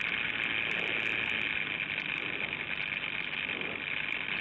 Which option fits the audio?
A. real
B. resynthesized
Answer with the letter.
A